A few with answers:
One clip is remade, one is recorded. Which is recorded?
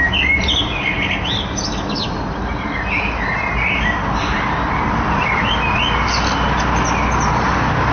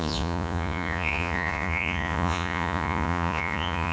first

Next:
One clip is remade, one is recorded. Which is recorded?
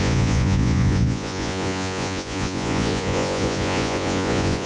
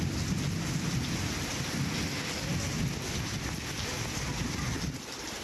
second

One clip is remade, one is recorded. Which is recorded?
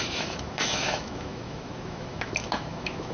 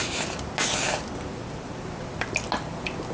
second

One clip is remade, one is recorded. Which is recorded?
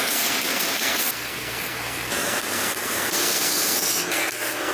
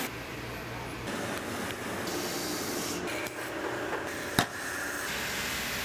second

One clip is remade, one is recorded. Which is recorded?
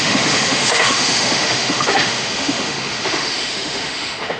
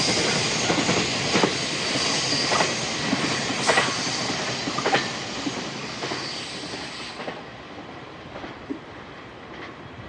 second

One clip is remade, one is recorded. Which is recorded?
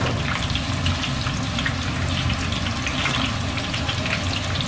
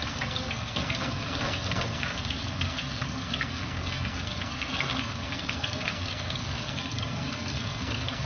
first